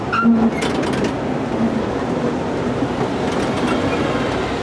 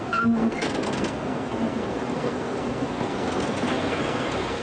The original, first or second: first